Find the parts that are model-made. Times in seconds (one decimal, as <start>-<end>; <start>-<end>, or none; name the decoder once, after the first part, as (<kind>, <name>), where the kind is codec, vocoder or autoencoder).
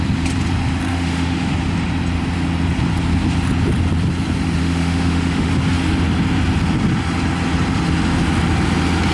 0.9-1.5 (autoencoder, DAC-VAE); 4.6-5.5